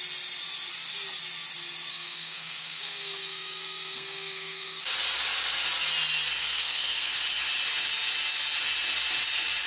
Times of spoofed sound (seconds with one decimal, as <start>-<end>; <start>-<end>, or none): 1.9-4.8; 6.4-7.1